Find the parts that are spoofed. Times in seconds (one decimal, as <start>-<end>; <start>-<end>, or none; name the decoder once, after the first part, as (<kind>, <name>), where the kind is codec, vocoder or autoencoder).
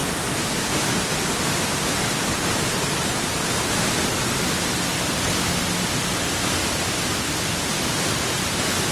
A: none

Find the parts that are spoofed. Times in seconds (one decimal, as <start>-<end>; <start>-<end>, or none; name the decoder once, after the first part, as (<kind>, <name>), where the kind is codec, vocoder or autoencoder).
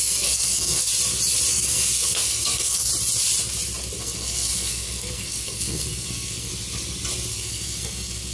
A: 0.0-0.9 (codec, SNAC); 1.5-2.9; 4.0-6.5; 7.3-8.3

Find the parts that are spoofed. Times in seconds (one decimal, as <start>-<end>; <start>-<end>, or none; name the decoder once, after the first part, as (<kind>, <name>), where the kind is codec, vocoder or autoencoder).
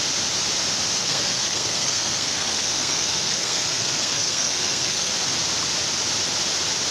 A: 1.0-5.1 (codec, SNAC)